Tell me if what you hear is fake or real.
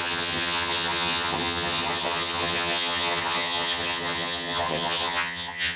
fake